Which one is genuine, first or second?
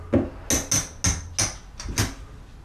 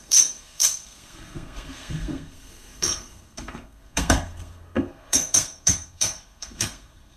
first